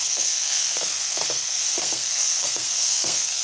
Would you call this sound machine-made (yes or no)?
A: yes